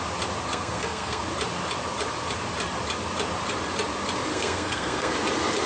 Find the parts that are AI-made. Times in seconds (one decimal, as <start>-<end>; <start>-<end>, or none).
0.5-1.2; 4.3-5.1